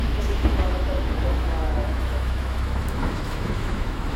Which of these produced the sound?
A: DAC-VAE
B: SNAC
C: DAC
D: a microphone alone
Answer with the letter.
A